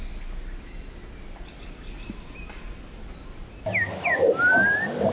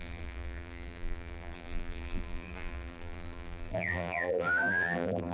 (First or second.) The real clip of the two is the first